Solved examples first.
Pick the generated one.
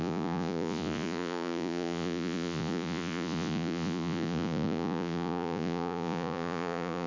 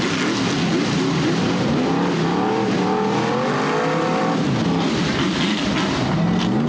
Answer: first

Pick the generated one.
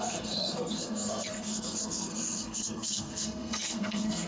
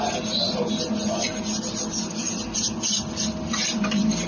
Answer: first